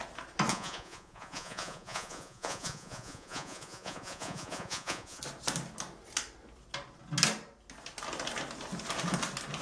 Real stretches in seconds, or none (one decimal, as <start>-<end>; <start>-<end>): 0.0-0.5; 5.2-9.6